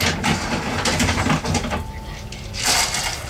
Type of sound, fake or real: real